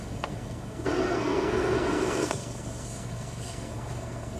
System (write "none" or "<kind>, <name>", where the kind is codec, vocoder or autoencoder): codec, SNAC